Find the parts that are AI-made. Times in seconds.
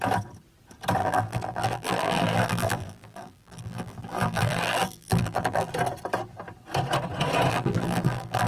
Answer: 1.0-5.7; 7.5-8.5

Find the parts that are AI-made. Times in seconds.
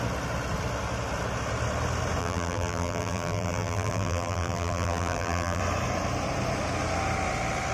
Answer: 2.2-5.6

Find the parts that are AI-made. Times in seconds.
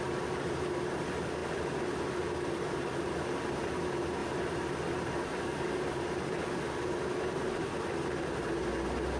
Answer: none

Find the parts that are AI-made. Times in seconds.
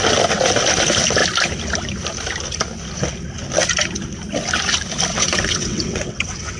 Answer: 5.1-6.6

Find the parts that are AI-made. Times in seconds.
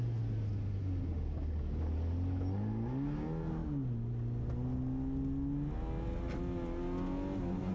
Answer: none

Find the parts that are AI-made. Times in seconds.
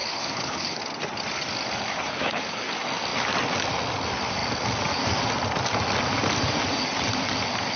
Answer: 0.0-0.8; 1.9-2.7